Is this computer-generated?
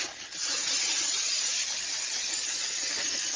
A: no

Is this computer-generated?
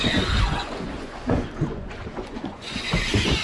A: yes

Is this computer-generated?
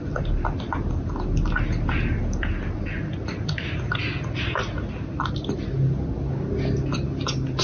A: no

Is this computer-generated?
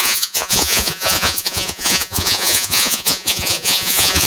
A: yes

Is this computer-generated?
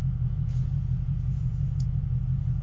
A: yes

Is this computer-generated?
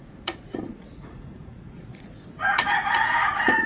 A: yes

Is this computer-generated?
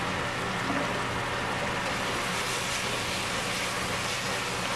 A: no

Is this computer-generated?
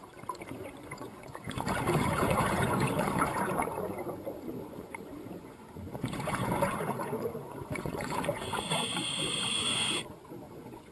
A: yes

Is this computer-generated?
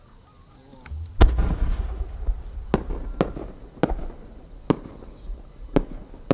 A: no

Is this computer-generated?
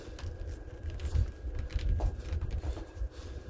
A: no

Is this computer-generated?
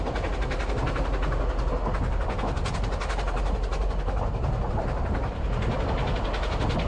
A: no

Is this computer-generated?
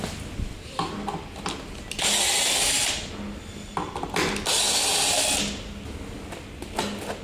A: no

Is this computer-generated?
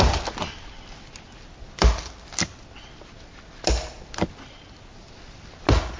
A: no